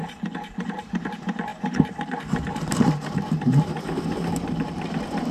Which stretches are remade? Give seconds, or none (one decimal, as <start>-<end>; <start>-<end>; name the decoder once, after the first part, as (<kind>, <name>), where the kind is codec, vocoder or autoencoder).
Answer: 0.0-1.1 (vocoder, BigVGAN v2); 1.5-4.7